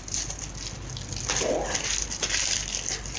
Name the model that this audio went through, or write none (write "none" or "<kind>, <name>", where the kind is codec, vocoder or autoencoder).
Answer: none